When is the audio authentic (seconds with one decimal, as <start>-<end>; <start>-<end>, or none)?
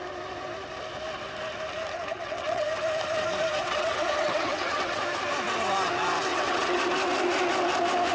0.0-2.1; 2.7-3.6; 5.0-6.3; 6.8-8.1